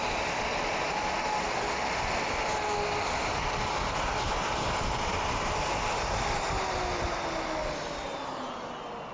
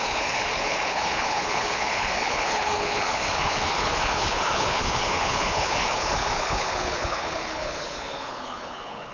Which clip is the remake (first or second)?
second